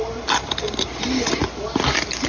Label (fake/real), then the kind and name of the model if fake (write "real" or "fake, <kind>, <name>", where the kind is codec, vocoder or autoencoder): real